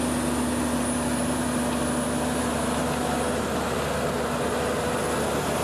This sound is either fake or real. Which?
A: real